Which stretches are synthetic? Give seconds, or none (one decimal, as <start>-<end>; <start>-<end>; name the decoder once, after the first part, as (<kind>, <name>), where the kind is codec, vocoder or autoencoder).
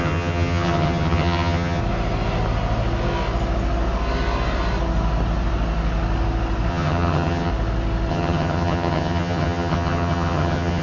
0.0-1.8 (vocoder, HiFi-GAN); 6.7-7.5; 8.1-10.8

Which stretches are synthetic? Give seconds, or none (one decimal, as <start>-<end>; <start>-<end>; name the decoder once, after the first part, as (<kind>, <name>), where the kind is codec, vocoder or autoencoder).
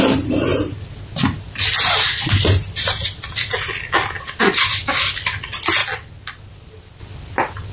none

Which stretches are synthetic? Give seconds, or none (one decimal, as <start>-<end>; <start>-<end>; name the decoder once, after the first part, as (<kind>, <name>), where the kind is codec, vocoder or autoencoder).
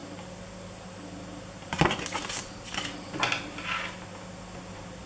none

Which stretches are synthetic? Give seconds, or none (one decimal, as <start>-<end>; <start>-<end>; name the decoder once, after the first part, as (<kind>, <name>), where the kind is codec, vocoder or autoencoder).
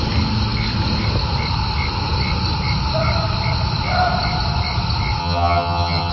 5.2-6.1 (vocoder, HiFi-GAN)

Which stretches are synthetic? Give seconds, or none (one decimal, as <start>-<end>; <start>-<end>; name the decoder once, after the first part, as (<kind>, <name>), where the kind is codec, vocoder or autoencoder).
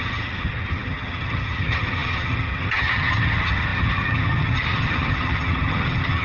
0.0-6.2 (vocoder, HiFi-GAN)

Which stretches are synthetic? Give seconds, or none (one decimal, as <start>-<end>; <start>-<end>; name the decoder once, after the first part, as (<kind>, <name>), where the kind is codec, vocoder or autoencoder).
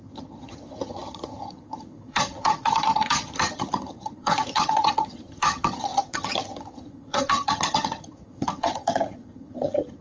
0.0-10.0 (vocoder, HiFi-GAN)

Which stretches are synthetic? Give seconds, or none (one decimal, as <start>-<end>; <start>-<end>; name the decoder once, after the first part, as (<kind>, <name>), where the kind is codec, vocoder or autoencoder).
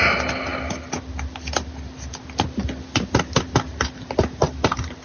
none